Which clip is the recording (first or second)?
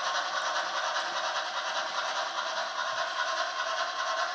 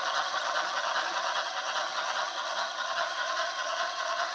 first